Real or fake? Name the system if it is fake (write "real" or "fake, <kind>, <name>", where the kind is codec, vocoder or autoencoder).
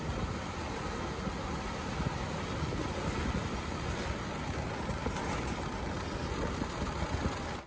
real